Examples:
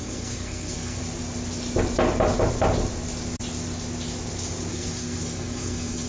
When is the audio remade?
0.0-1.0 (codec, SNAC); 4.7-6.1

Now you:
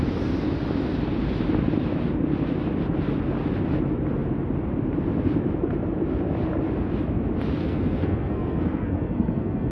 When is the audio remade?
7.6-9.7 (codec, SNAC)

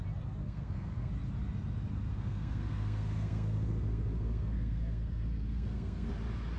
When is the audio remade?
0.4-1.1 (codec, SNAC); 2.1-6.1

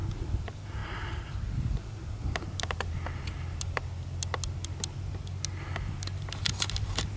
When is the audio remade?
none

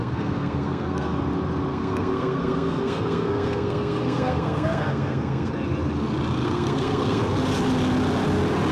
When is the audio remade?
0.0-1.2 (codec, SNAC); 1.7-5.5; 6.4-7.2

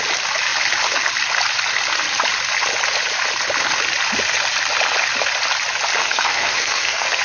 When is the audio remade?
6.0-7.2 (codec, SNAC)

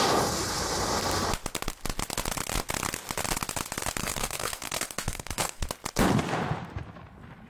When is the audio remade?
4.0-5.7 (codec, SNAC)